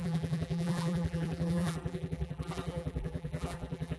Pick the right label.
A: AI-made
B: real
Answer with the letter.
A